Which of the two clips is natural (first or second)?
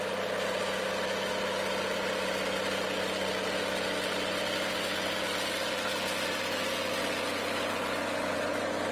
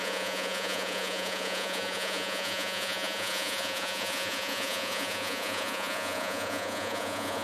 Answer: first